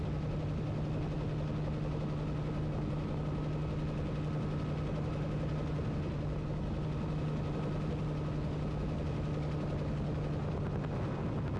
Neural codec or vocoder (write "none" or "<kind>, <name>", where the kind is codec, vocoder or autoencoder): none